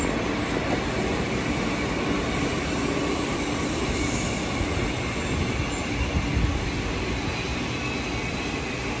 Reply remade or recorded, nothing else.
recorded